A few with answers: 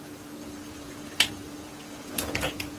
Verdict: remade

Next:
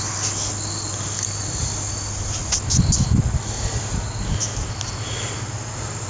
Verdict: recorded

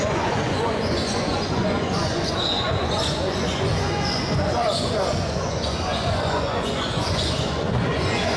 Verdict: remade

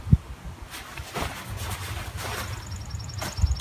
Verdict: recorded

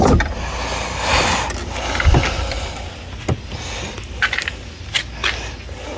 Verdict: recorded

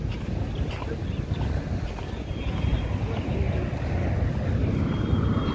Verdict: recorded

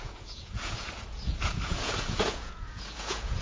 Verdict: remade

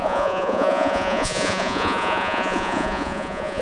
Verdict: remade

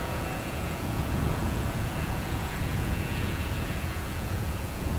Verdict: remade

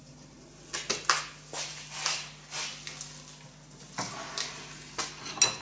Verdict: recorded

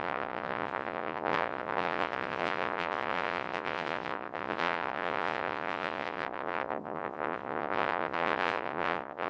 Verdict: remade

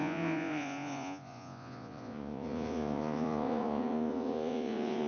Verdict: remade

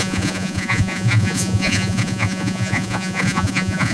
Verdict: remade